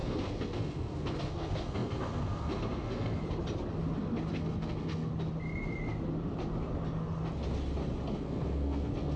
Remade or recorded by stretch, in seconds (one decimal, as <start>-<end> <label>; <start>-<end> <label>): 0.0-3.2 remade; 3.2-4.3 recorded; 4.3-5.1 remade; 5.1-8.1 recorded; 8.1-9.2 remade